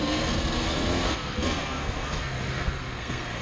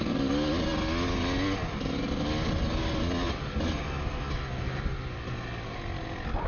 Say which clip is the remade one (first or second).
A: first